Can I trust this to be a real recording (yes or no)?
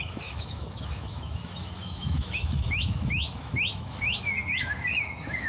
no